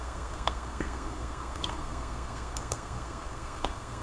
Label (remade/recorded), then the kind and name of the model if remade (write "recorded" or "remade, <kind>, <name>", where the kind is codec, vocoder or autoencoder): remade, codec, SNAC